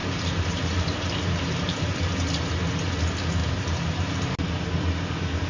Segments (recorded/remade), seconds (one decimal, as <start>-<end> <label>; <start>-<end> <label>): 0.0-2.0 remade; 2.0-3.4 recorded; 3.4-4.1 remade; 4.1-5.5 recorded